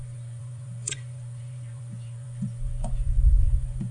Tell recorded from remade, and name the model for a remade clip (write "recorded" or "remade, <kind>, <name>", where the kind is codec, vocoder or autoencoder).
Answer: remade, vocoder, Vocos